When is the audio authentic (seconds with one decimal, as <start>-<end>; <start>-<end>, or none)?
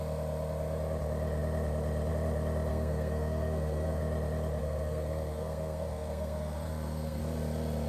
0.0-2.7; 4.0-4.6; 7.2-7.9